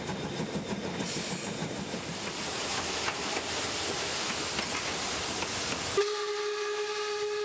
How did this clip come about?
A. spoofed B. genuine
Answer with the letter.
B